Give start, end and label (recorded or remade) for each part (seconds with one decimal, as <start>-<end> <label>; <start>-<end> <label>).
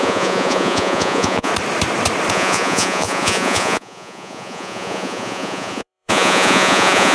0.0-1.5 remade; 1.5-2.3 recorded; 2.3-7.1 remade